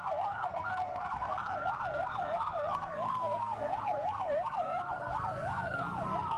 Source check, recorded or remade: remade